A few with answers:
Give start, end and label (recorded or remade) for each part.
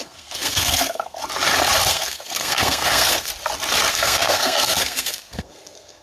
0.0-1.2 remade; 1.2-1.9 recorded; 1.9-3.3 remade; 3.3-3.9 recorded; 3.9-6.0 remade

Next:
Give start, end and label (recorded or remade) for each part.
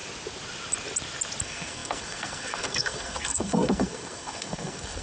0.0-1.4 recorded; 1.4-5.0 remade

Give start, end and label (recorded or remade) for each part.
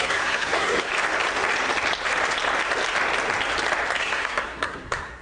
0.0-0.9 remade; 0.9-4.0 recorded; 4.0-5.2 remade